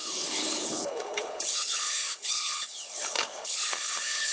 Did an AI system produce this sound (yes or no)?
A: yes